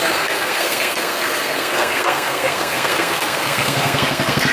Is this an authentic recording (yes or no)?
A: no